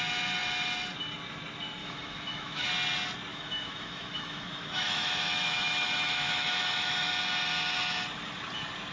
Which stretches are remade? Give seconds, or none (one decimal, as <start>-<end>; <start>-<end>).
1.8-2.7; 3.3-7.1